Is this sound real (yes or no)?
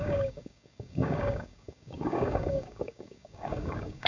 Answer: no